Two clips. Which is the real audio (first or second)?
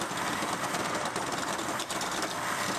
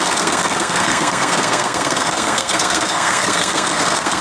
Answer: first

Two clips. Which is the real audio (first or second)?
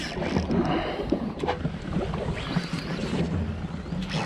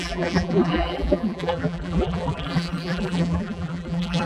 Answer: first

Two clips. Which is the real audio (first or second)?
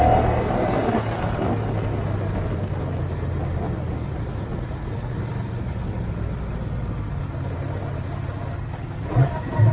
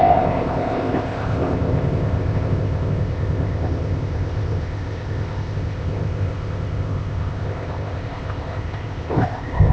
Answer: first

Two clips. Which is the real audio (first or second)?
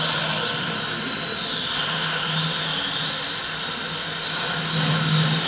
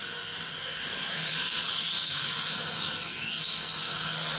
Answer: first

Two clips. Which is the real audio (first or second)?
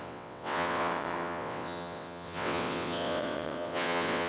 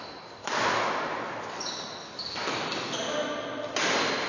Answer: second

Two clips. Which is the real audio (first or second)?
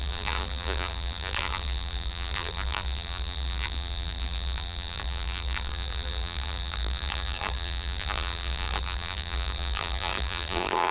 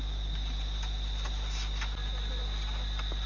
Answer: second